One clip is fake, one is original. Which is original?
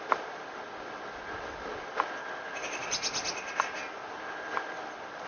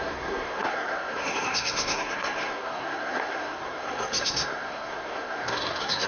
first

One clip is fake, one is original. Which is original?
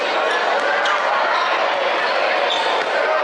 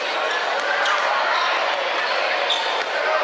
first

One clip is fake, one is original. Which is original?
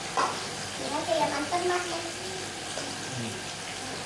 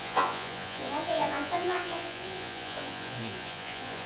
first